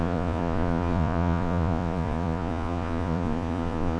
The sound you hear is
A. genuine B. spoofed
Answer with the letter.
B